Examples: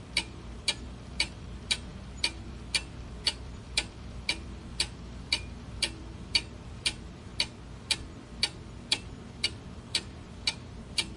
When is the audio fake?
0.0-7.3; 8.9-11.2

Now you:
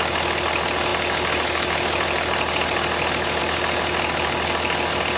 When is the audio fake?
none

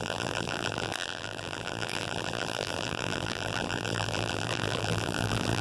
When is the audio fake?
0.0-5.6